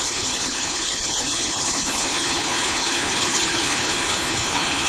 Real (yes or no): no